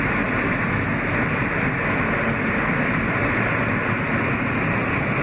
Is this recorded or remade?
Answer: recorded